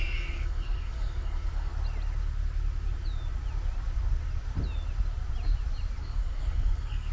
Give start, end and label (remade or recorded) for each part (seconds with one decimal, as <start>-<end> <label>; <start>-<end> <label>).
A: 0.0-1.7 remade; 1.7-6.0 recorded; 6.0-7.1 remade